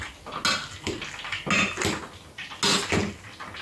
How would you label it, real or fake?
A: real